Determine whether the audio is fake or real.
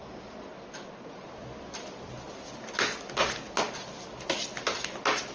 real